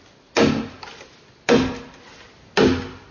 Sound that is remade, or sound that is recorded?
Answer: recorded